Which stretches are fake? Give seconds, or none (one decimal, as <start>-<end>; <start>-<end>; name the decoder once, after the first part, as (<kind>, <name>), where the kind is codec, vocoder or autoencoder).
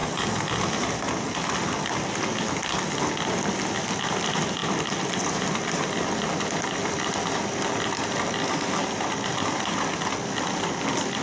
none